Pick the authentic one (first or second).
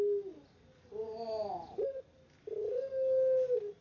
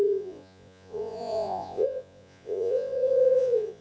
first